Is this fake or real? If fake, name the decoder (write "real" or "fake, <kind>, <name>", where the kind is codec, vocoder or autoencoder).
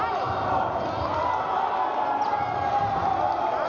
real